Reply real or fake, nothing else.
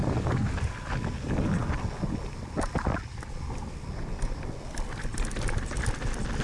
real